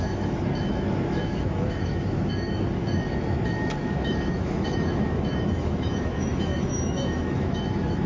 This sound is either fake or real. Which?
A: fake